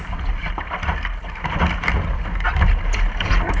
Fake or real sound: real